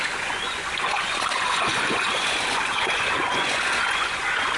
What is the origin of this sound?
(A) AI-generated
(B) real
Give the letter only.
A